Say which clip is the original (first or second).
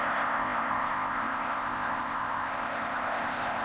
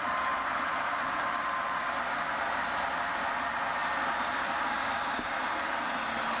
second